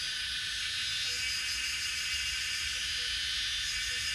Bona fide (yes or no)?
yes